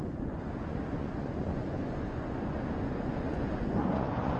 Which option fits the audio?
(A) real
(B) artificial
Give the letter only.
B